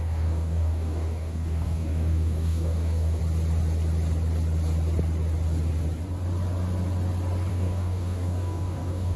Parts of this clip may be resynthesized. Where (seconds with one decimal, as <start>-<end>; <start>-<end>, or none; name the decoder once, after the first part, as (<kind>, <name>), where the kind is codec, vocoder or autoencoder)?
0.0-3.2 (codec, DAC); 7.5-9.2